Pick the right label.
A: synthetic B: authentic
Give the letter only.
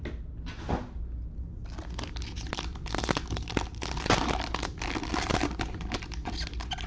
B